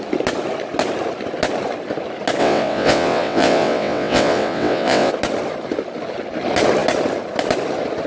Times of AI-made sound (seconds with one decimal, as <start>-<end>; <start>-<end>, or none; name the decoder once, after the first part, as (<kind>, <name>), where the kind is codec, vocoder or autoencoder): 2.4-5.1 (vocoder, WaveNeXt)